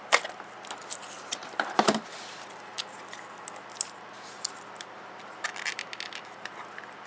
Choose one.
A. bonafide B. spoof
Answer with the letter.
A